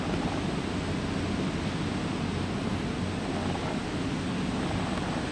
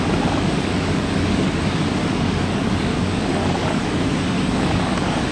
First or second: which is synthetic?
second